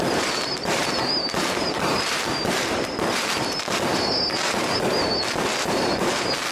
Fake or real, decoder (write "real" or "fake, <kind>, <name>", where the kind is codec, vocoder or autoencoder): fake, vocoder, BigVGAN v2